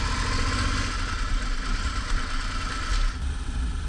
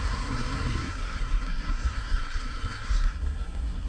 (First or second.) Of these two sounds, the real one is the first